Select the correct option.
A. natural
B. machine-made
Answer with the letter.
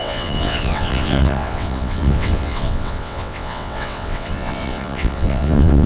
B